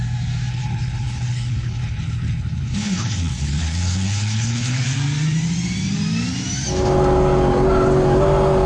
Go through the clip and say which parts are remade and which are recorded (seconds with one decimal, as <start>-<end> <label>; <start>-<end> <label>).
0.0-0.5 recorded; 0.5-4.8 remade; 4.8-8.7 recorded